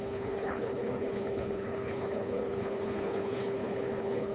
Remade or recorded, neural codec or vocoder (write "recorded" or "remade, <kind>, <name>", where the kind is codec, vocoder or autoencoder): remade, codec, HILCodec